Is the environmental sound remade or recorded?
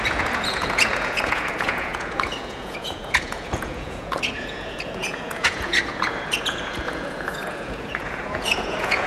remade